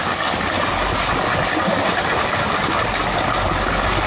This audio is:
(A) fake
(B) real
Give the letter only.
B